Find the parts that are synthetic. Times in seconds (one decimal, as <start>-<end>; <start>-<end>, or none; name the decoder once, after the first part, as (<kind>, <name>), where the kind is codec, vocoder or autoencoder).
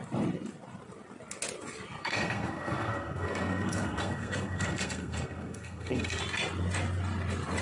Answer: 2.0-6.2 (codec, SNAC)